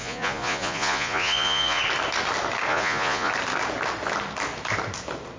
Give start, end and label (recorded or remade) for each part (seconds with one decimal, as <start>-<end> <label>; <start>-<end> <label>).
0.0-1.8 remade; 1.8-2.7 recorded; 2.7-3.3 remade; 3.3-5.4 recorded